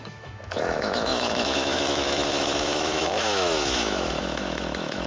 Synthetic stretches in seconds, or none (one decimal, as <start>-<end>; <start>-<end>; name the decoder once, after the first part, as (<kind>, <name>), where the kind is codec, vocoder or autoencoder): 0.0-5.1 (autoencoder, DAC-VAE)